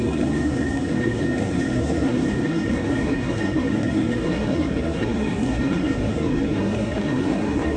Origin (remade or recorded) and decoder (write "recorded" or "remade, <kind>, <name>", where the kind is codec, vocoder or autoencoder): remade, codec, SNAC